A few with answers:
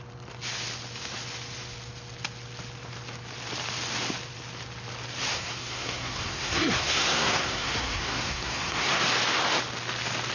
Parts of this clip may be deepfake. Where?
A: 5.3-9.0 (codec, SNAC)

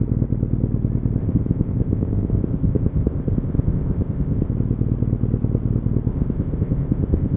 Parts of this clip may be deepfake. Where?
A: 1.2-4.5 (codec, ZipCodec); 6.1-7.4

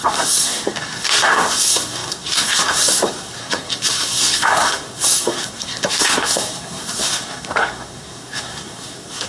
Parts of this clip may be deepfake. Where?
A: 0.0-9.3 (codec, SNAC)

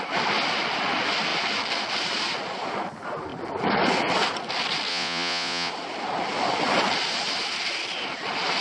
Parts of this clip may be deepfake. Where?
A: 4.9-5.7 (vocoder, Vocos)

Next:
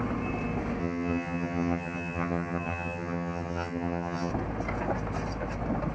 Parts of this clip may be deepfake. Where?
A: 0.8-4.3 (vocoder, HiFi-GAN)

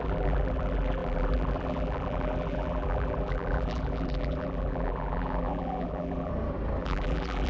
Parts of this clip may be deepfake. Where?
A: 0.0-6.3 (vocoder, BigVGAN v2); 6.8-7.5

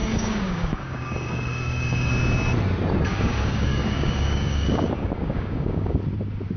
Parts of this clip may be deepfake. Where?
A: 0.0-2.1 (codec, DAC); 3.1-6.0